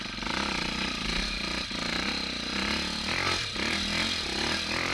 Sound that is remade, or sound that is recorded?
recorded